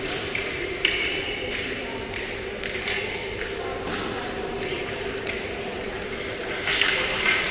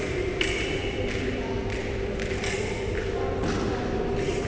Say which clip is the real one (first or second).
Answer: second